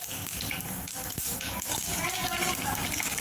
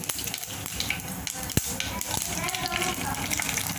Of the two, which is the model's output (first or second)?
first